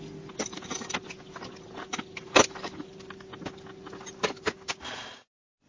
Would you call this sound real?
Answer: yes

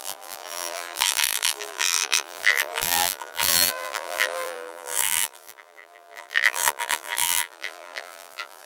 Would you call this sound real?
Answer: no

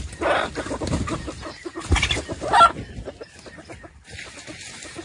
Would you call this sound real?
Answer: no